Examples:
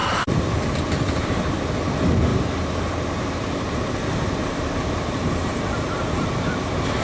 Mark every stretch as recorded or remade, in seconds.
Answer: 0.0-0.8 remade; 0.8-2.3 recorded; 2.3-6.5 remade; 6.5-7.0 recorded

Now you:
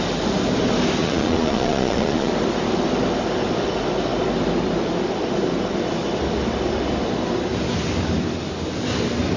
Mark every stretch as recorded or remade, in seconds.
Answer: 0.0-1.0 recorded; 1.0-2.3 remade; 2.3-9.4 recorded

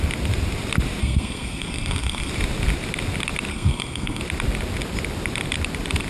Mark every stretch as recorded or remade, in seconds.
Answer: 0.0-1.0 recorded; 1.0-2.3 remade; 2.3-3.5 recorded; 3.5-4.2 remade; 4.2-6.1 recorded